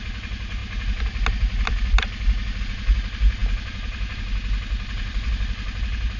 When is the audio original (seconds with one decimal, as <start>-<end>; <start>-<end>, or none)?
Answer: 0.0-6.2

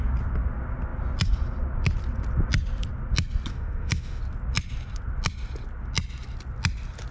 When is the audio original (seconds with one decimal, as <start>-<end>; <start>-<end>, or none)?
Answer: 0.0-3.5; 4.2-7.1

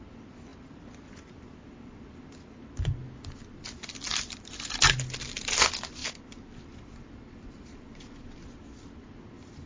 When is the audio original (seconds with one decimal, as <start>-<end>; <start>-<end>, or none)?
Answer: 0.0-9.7